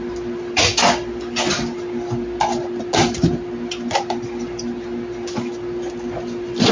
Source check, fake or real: real